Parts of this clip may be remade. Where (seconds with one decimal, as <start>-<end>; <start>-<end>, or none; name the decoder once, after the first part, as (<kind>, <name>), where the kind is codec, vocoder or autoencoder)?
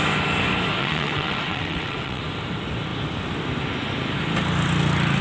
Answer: 0.8-2.2 (vocoder, WaveNeXt)